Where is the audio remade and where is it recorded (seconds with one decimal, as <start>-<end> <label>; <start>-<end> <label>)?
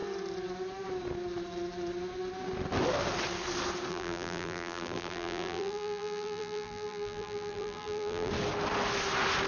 0.0-3.9 recorded; 3.9-8.3 remade; 8.3-9.5 recorded